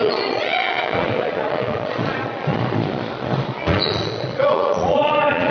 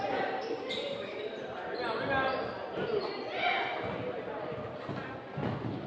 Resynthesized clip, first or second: first